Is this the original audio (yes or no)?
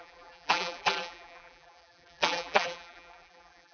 no